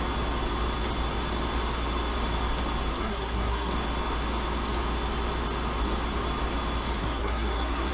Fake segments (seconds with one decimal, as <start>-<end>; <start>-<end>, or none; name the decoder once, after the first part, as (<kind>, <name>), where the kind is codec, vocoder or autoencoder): 2.9-3.7 (codec, SNAC); 7.0-7.9